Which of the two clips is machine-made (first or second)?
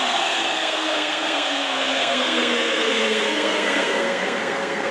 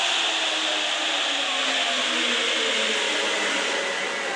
first